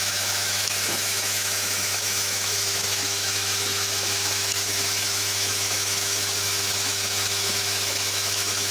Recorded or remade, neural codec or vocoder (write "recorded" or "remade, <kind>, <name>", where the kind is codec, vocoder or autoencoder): remade, autoencoder, DAC-VAE